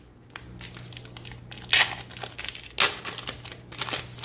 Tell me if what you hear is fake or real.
real